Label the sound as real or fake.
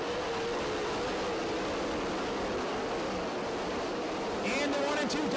real